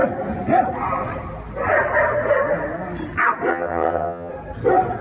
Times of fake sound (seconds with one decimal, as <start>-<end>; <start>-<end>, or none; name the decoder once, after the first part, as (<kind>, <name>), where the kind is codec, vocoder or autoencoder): 3.5-4.3 (vocoder, HiFi-GAN)